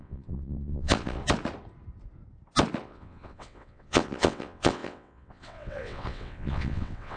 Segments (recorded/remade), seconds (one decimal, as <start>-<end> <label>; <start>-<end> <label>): 0.0-1.2 remade; 1.2-2.8 recorded; 2.8-7.2 remade